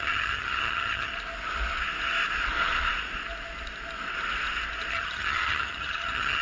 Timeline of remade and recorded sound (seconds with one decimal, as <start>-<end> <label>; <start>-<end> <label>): 0.0-1.1 remade; 1.1-4.9 recorded; 4.9-6.4 remade